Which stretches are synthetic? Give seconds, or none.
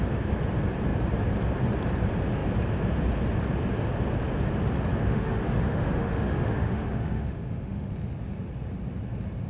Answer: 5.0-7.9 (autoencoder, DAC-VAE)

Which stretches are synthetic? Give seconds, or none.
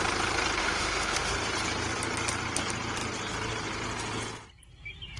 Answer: 0.6-1.3 (autoencoder, DAC-VAE)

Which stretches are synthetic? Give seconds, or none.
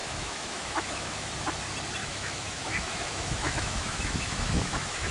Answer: 0.0-1.3 (autoencoder, DAC-VAE); 2.0-5.1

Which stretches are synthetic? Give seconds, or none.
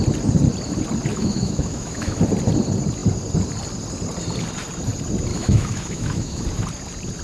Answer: 1.1-2.2 (autoencoder, DAC-VAE); 5.3-6.4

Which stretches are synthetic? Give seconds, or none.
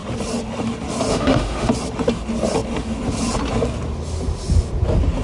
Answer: 1.1-1.7 (autoencoder, DAC-VAE)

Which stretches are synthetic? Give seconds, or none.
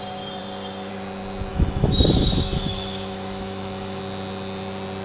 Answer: 1.5-4.0 (autoencoder, DAC-VAE)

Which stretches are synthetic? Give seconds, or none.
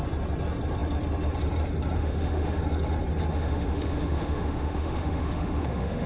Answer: 2.0-2.6 (autoencoder, DAC-VAE); 3.3-6.1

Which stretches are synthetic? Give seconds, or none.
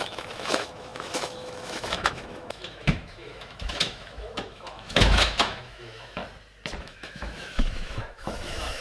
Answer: 0.0-6.2 (autoencoder, DAC-VAE); 6.8-8.8